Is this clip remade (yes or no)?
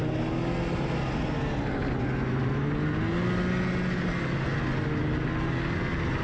no